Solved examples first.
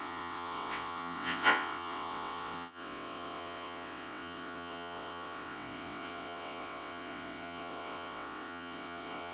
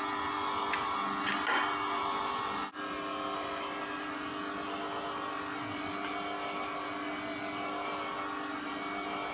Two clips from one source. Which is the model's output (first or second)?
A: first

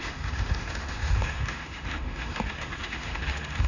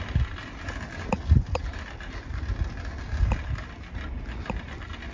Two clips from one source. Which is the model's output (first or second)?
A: first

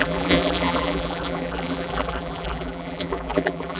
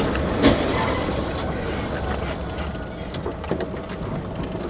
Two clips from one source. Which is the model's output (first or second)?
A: first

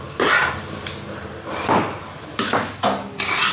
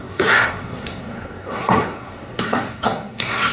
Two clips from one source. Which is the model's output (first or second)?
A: second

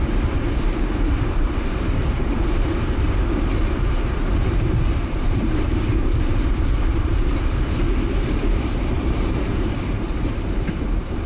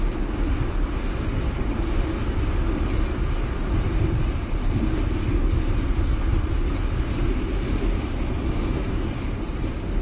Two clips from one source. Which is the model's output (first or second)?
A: first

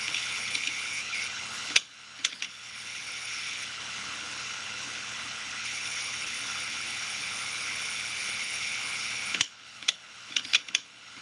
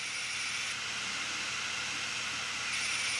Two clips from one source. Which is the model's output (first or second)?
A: first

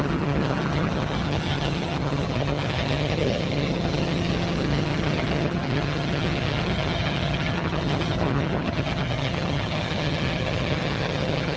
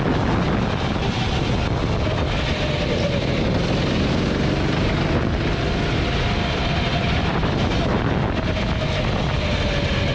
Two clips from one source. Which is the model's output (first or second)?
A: first